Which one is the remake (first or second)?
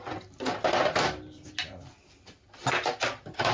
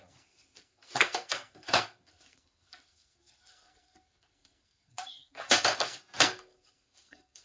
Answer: second